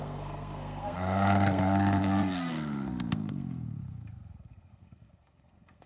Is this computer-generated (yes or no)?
yes